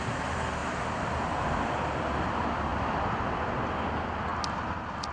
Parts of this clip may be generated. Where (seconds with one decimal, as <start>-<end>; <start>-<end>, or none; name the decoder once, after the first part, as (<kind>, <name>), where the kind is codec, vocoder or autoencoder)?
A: 2.7-3.6 (vocoder, BigVGAN v2)